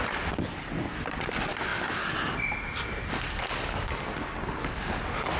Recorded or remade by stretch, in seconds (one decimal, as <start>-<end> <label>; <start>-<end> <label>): 0.0-1.7 recorded; 1.7-3.1 remade; 3.1-5.4 recorded